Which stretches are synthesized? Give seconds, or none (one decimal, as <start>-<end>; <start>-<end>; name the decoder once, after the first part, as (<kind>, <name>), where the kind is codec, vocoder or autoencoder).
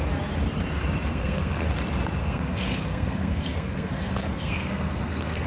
1.1-1.7 (codec, SNAC); 2.2-5.5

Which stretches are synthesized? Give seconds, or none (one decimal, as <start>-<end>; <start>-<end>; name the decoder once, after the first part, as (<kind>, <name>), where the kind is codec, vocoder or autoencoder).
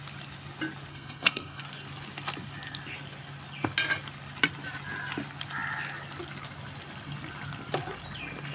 0.9-1.6 (codec, SNAC)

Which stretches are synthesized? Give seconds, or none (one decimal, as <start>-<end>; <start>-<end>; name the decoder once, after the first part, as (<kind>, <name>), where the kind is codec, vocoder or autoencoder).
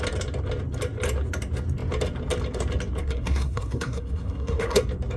3.0-4.8 (codec, SNAC)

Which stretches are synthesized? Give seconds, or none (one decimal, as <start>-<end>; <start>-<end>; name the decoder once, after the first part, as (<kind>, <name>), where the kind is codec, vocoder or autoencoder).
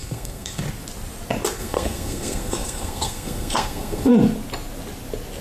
0.0-0.6 (codec, SNAC); 1.6-4.1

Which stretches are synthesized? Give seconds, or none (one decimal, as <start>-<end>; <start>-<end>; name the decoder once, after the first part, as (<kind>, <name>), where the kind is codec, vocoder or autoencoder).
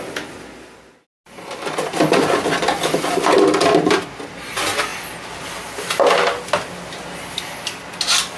none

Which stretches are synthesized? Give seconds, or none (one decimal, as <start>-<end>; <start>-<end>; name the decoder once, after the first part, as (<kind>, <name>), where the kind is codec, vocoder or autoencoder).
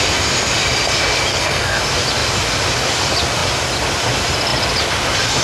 1.3-1.8 (codec, SNAC)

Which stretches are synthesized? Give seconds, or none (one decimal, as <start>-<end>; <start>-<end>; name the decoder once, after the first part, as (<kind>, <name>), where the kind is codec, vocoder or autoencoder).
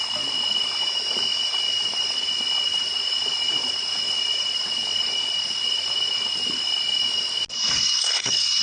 7.7-8.6 (codec, SNAC)